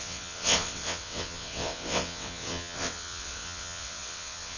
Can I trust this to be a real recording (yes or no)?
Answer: no